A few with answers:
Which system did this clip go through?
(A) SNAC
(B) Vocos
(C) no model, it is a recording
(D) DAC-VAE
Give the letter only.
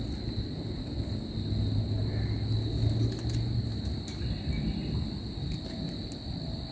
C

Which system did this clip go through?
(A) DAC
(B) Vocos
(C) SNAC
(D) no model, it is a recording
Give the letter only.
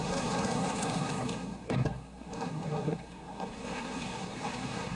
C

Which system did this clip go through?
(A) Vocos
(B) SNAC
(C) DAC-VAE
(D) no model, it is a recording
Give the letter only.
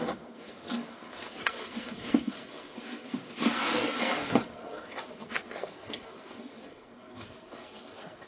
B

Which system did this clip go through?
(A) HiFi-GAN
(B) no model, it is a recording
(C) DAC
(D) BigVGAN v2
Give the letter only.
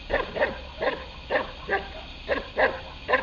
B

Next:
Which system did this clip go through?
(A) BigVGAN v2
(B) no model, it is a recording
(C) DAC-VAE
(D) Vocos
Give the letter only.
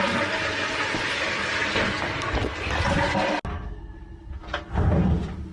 B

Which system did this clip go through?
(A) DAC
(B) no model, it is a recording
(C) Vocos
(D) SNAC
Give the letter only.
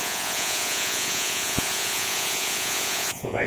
C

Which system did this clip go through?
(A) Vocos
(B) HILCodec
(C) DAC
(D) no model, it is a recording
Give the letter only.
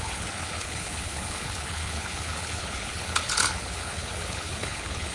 B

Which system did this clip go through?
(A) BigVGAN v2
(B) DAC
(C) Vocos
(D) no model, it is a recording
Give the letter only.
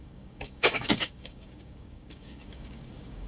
B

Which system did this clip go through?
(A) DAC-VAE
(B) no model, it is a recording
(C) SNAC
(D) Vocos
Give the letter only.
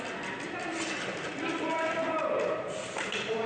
B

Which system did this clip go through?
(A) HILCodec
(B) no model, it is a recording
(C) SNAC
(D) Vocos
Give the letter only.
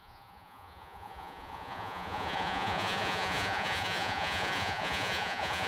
D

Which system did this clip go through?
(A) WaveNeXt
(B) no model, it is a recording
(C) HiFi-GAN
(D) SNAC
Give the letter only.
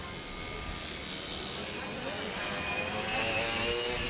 B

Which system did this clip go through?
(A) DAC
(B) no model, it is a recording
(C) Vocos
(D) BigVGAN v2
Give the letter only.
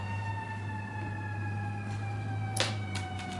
B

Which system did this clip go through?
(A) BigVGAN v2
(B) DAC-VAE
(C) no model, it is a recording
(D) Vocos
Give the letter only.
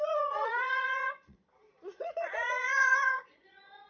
D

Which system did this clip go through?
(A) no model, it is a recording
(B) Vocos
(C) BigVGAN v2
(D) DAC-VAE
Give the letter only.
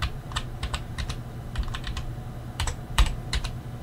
C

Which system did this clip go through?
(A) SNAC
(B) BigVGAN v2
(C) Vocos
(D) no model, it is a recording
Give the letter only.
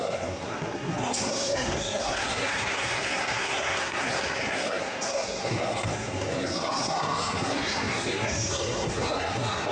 A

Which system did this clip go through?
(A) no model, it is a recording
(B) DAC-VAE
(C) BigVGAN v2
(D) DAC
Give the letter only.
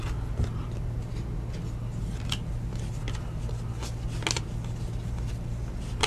A